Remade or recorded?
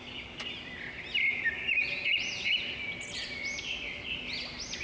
recorded